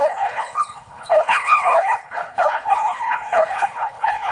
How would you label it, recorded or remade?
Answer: remade